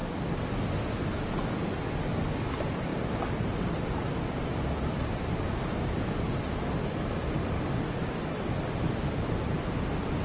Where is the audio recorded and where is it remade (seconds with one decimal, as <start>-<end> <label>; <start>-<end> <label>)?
0.0-10.2 recorded